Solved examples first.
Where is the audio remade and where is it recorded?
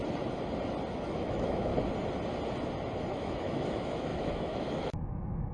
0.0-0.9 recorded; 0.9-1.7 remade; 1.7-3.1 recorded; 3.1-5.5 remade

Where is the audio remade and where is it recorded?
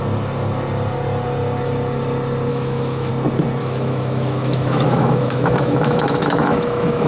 0.0-2.5 recorded; 2.5-3.1 remade; 3.1-3.6 recorded; 3.6-7.1 remade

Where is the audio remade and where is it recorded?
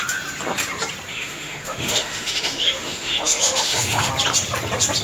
0.0-1.1 recorded; 1.1-4.1 remade; 4.1-5.0 recorded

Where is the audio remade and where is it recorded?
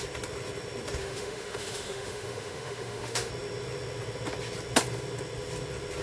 0.0-1.0 recorded; 1.0-3.3 remade; 3.3-6.0 recorded